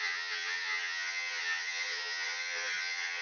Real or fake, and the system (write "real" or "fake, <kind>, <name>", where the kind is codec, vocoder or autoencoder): fake, vocoder, HiFi-GAN